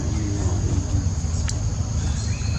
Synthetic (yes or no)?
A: no